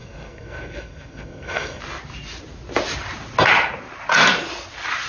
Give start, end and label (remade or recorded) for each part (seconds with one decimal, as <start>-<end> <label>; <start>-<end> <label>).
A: 0.0-1.8 remade; 1.8-5.1 recorded